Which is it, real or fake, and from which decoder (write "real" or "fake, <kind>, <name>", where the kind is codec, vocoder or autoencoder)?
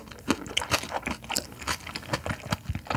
real